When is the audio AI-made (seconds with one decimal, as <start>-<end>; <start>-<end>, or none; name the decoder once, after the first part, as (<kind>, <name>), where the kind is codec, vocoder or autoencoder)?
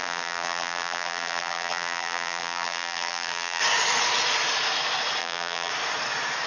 0.0-3.6 (vocoder, BigVGAN v2); 5.2-5.7